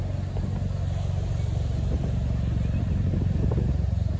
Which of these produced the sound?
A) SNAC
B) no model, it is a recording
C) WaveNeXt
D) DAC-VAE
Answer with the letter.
B